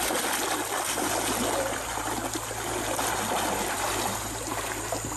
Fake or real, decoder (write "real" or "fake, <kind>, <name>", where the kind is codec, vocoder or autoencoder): real